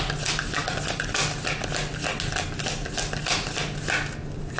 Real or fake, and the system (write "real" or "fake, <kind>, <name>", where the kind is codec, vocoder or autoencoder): real